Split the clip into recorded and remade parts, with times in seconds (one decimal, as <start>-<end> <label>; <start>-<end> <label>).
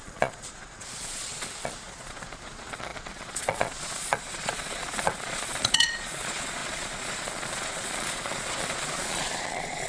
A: 0.0-9.9 remade